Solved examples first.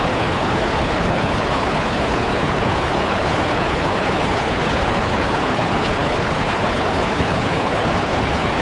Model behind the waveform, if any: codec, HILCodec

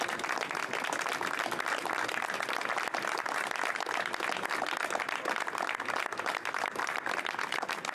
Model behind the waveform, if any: none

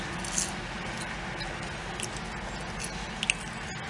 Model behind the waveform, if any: none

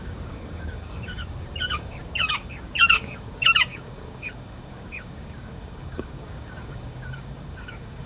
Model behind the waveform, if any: codec, DAC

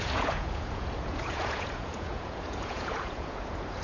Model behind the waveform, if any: vocoder, Vocos